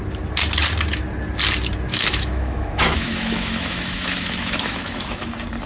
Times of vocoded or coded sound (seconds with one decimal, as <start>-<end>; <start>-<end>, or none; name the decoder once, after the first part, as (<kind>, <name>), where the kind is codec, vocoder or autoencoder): 1.9-5.3 (autoencoder, DAC-VAE)